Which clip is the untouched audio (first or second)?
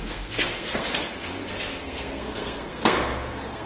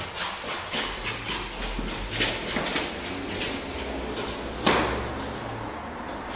second